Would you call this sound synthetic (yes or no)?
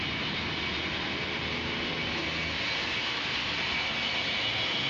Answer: no